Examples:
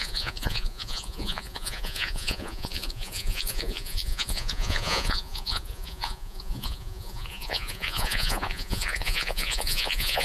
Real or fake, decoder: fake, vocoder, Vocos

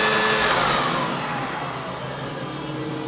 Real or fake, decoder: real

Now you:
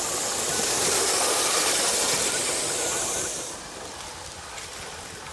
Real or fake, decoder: real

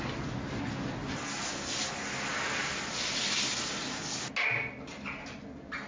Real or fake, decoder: real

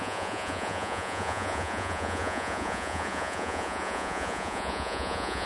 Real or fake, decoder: fake, vocoder, Vocos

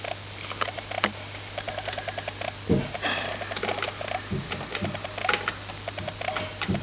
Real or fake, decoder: real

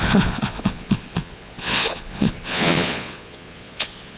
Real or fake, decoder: fake, vocoder, Vocos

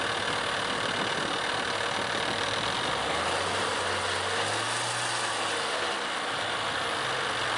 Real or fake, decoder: real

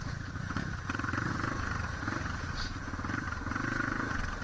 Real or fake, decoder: fake, vocoder, Vocos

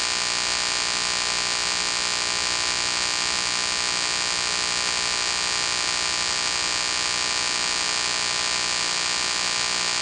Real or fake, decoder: real